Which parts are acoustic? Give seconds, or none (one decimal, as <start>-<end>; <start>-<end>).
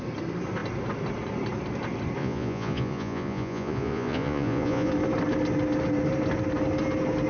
0.0-2.2; 4.9-7.3